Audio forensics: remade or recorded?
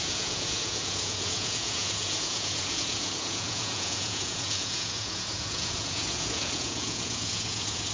remade